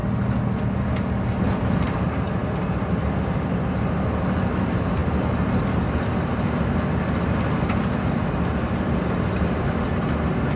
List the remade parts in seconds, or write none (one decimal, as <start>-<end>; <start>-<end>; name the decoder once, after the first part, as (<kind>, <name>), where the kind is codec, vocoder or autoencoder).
none